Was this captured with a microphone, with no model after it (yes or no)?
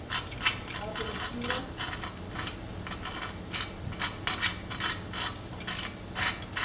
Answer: yes